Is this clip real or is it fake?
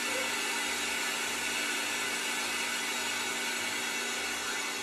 real